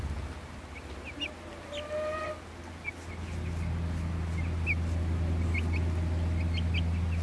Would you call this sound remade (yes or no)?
no